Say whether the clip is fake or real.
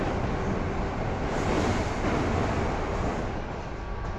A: real